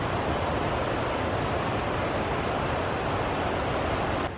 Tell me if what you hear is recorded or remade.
recorded